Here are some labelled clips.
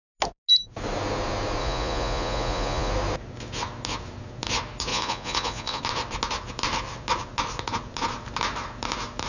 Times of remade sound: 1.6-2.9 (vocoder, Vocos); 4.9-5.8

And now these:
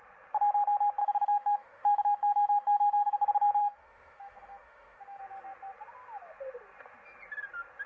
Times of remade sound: 1.0-3.2 (autoencoder, DAC-VAE); 3.6-5.2

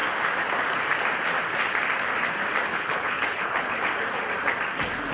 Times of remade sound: 2.7-3.8 (codec, HILCodec)

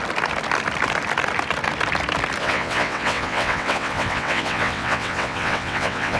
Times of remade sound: 2.4-6.2 (vocoder, WaveNeXt)

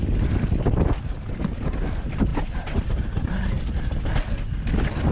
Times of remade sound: none

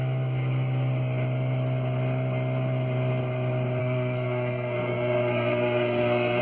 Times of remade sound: 3.8-6.4 (codec, SNAC)

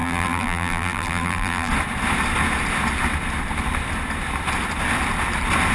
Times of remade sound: 0.0-1.7 (vocoder, BigVGAN v2)

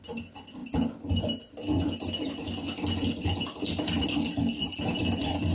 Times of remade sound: none